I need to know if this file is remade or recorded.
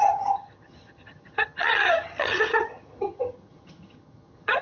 remade